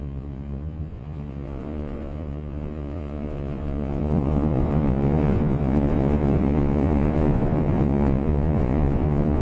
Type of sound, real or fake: fake